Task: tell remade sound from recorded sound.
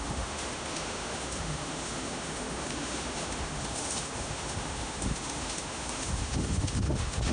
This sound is remade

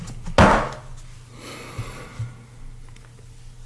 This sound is recorded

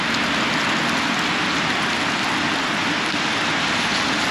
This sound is recorded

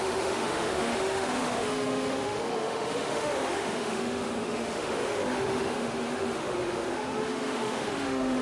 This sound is remade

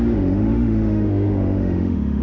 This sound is remade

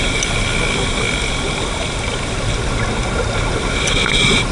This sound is recorded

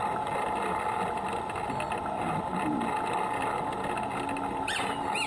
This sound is recorded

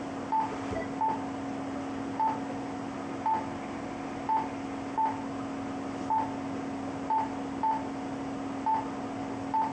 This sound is recorded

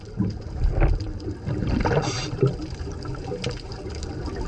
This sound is recorded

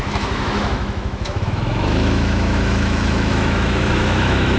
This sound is remade